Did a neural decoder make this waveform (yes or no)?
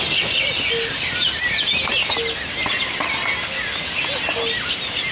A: no